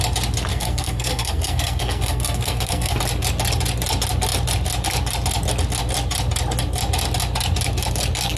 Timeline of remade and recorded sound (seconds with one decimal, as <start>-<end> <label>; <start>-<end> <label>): 0.0-0.5 recorded; 0.5-3.0 remade; 3.0-8.4 recorded